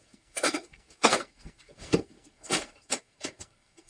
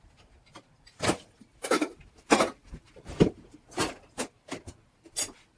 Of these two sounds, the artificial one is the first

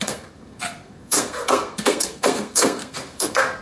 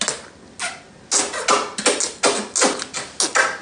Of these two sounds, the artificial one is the first